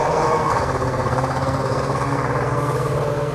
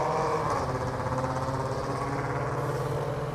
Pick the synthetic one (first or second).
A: first